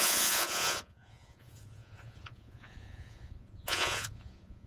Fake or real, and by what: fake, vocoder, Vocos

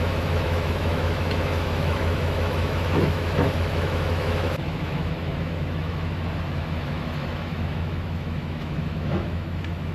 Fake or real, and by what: fake, autoencoder, DAC-VAE